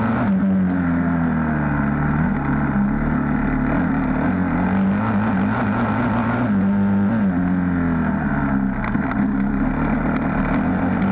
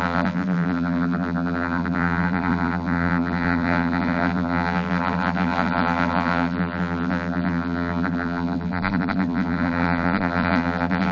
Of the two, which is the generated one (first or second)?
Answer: second